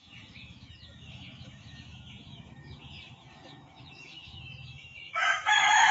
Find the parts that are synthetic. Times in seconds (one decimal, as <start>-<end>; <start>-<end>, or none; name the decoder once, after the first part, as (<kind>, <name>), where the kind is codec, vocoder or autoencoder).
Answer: 0.0-5.9 (autoencoder, DAC-VAE)

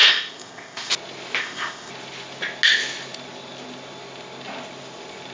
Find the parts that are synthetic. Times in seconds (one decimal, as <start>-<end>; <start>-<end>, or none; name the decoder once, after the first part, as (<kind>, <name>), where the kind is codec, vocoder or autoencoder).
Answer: 0.0-0.9 (codec, ZipCodec); 1.4-1.9

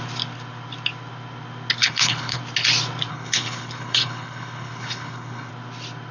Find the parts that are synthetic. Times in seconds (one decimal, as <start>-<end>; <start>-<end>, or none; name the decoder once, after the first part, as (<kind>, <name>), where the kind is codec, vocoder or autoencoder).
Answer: 1.8-2.4 (codec, HILCodec); 3.1-5.5

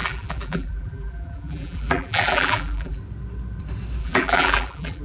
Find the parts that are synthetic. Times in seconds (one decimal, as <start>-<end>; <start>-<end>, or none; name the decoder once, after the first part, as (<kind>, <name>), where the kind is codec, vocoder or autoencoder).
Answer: 0.0-3.0 (vocoder, BigVGAN v2); 4.0-5.0

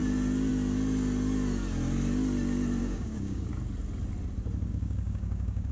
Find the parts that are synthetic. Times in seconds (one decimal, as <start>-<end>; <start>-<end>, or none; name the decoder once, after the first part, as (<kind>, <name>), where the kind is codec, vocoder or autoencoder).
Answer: 2.8-3.5 (codec, DAC); 4.7-5.7

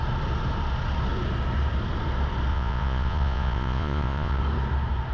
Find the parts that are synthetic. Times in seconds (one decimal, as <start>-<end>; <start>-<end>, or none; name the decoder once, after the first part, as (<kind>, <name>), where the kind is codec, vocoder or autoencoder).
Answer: 2.5-4.4 (vocoder, Vocos)